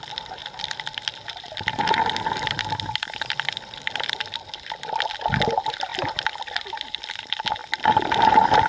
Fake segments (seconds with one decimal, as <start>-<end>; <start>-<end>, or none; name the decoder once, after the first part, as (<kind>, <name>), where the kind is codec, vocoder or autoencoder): 0.4-4.7 (vocoder, BigVGAN v2); 5.9-6.9; 7.6-8.7